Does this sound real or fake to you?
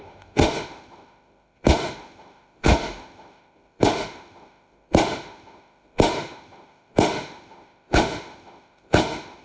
fake